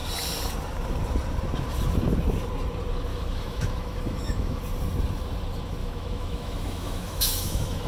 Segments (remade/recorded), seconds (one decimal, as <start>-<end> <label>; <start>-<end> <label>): 0.0-3.1 recorded; 3.1-4.6 remade; 4.6-5.8 recorded; 5.8-7.9 remade